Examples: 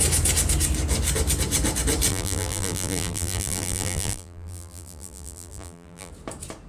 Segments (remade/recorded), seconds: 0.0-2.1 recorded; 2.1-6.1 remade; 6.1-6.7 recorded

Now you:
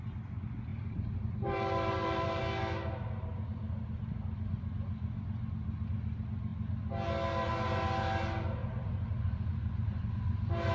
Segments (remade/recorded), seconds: 0.0-0.7 recorded; 0.7-2.4 remade; 2.4-8.6 recorded; 8.6-10.7 remade

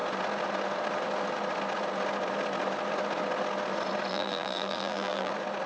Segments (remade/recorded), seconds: 0.0-4.1 recorded; 4.1-5.3 remade; 5.3-5.7 recorded